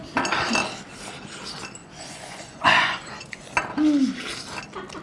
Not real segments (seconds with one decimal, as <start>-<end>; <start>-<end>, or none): 1.8-3.5